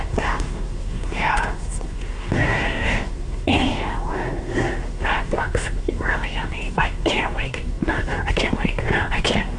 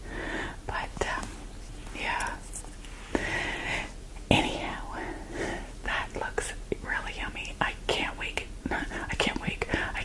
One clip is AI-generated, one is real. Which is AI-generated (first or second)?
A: first